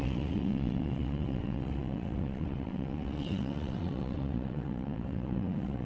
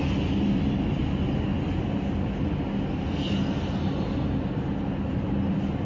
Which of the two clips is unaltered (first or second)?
second